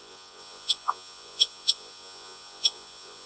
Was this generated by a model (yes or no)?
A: yes